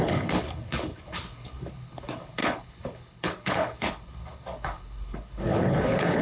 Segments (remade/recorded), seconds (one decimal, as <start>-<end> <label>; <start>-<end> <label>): 0.0-6.2 remade